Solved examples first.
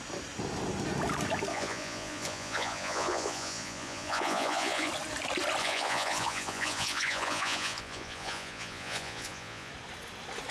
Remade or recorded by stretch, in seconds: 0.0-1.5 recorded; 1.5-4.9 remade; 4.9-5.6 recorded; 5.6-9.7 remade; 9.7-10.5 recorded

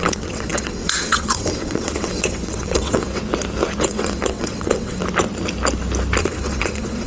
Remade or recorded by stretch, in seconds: 0.0-3.2 remade; 3.2-3.8 recorded; 3.8-5.0 remade; 5.0-6.2 recorded; 6.2-7.1 remade

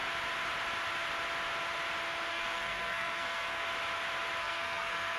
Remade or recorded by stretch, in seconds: 0.0-2.3 recorded; 2.3-3.7 remade; 3.7-4.4 recorded; 4.4-5.2 remade